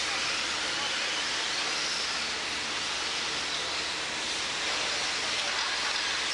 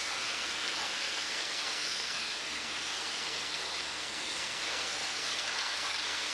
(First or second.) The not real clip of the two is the second